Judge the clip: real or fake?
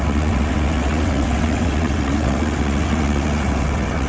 fake